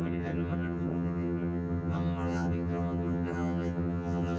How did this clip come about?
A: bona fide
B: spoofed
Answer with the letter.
B